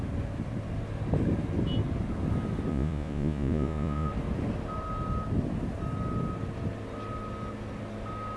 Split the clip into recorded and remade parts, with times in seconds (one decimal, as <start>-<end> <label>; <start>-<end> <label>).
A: 0.0-2.7 recorded; 2.7-4.1 remade; 4.1-8.4 recorded